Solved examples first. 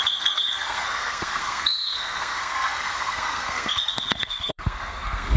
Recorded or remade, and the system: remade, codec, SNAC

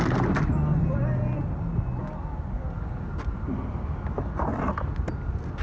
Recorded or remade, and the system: recorded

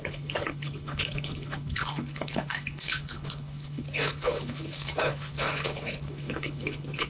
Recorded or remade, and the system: remade, codec, HILCodec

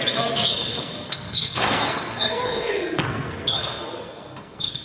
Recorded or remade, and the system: remade, codec, SNAC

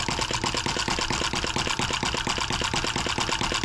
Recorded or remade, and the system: recorded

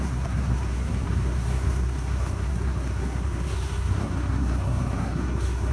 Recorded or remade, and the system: remade, codec, SNAC